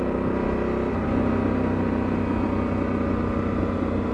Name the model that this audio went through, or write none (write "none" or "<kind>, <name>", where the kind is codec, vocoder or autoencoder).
none